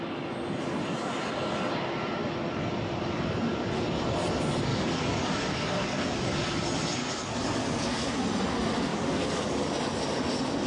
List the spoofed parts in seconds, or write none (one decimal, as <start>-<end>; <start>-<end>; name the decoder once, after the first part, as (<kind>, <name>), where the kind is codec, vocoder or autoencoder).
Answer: 4.7-6.3 (codec, DAC); 7.0-8.1; 8.9-9.7